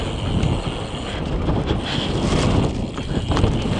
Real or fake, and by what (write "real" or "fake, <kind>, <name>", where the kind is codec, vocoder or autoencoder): real